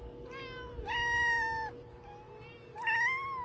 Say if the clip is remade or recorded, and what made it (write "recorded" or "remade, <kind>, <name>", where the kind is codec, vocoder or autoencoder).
recorded